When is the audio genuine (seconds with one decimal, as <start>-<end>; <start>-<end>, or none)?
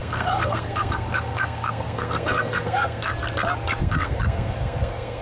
3.1-3.8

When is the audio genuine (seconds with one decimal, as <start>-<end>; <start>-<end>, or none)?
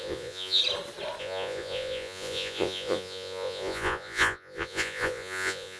0.6-1.2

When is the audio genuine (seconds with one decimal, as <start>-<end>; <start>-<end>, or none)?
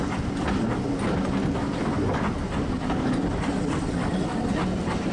0.0-5.1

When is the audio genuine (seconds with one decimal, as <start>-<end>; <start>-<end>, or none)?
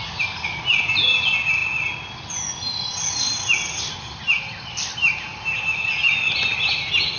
0.0-5.0; 5.9-7.2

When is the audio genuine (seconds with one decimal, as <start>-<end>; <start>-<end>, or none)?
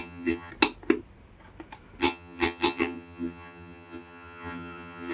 0.5-2.0